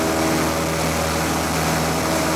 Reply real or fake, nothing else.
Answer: real